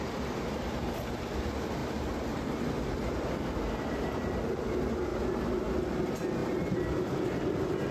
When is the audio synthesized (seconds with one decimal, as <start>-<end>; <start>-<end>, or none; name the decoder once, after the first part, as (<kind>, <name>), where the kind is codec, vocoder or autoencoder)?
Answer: none